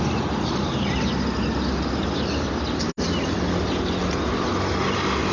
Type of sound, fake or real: real